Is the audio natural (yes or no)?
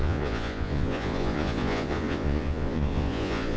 no